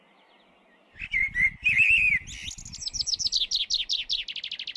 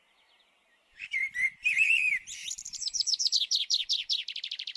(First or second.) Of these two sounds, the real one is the first